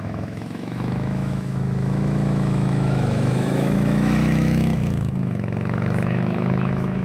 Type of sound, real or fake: fake